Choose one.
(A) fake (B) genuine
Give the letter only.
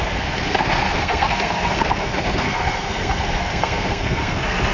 A